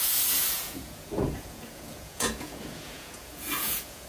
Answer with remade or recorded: remade